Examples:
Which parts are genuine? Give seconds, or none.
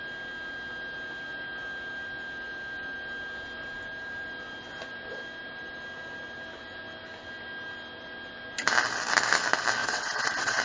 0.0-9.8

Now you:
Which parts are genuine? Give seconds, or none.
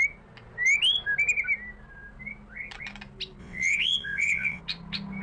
0.0-3.4; 4.6-5.2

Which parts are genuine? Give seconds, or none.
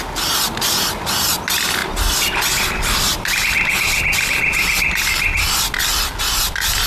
0.0-6.9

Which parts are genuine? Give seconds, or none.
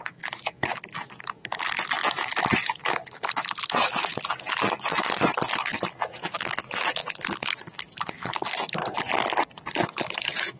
8.8-9.8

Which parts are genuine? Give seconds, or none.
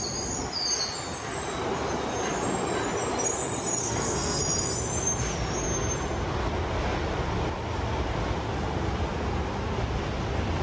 0.0-3.8; 4.4-10.6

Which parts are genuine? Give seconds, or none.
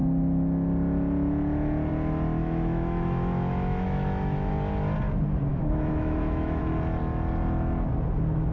0.0-2.4; 4.5-5.5; 6.6-8.5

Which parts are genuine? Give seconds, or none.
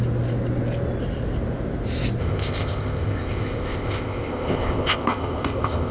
0.0-2.2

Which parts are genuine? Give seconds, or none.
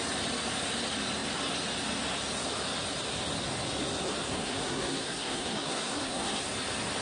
0.0-4.3; 6.4-7.0